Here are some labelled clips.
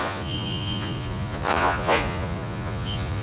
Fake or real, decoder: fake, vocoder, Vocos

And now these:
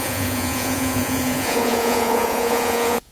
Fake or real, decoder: fake, vocoder, Vocos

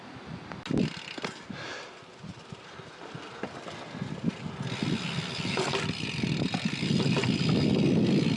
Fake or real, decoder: real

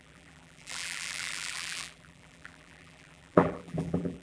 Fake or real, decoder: fake, vocoder, BigVGAN v2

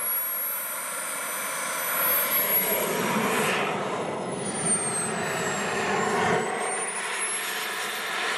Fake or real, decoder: real